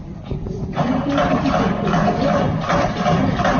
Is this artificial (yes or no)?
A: no